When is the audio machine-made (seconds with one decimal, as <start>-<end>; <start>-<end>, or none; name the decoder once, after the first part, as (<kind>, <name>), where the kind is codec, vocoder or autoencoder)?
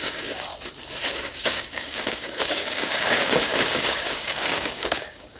0.0-0.5 (codec, DAC); 1.1-5.4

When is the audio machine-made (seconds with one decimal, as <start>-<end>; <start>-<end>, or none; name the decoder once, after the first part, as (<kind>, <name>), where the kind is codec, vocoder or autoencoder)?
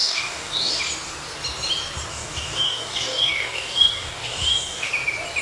0.0-0.8 (codec, DAC); 2.1-4.9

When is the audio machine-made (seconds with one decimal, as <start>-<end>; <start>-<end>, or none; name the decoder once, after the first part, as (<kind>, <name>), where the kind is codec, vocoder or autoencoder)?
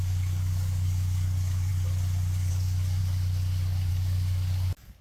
0.0-1.7 (codec, DAC); 2.5-3.0; 3.9-5.0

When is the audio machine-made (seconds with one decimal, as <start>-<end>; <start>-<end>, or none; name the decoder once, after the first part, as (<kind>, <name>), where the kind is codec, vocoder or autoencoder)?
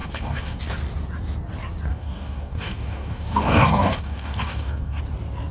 0.0-0.6 (codec, DAC); 1.9-5.0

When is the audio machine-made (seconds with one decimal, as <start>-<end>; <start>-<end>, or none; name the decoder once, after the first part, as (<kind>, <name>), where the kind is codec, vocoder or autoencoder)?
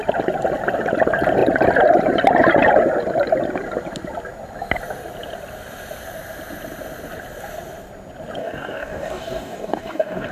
8.4-10.3 (codec, DAC)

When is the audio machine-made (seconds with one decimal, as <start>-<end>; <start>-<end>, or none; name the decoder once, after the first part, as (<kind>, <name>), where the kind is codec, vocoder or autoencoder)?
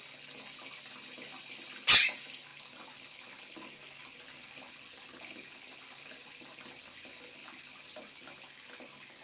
none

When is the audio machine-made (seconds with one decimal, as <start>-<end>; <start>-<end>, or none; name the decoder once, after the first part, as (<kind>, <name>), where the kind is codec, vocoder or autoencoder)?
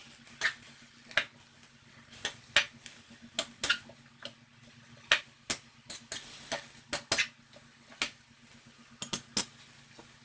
none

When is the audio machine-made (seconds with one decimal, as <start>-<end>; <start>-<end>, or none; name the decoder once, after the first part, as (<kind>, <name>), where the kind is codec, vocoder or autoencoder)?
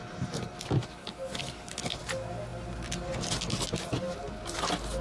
1.0-1.8 (codec, DAC)